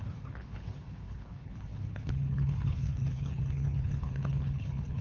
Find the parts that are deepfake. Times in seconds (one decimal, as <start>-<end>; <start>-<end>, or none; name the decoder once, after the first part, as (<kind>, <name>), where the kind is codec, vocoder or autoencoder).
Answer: 0.0-5.0 (codec, HILCodec)